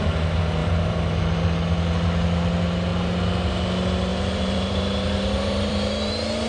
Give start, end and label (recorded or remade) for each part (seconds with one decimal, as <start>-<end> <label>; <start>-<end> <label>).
0.0-0.6 recorded; 0.6-1.2 remade; 1.2-4.1 recorded; 4.1-6.1 remade; 6.1-6.5 recorded